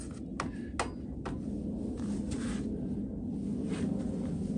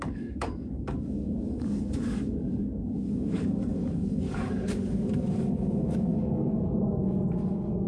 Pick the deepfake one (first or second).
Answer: second